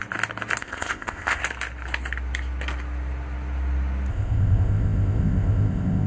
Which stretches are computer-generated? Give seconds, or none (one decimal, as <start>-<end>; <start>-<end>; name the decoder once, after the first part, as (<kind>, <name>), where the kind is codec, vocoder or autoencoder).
0.6-1.4 (codec, ZipCodec); 4.1-6.1